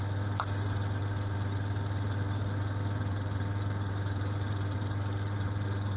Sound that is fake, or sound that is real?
real